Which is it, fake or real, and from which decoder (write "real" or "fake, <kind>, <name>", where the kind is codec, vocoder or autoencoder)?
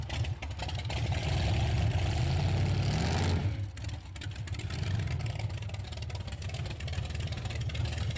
real